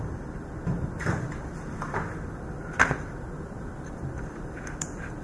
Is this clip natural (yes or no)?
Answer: no